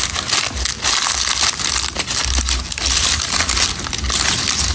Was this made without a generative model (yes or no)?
yes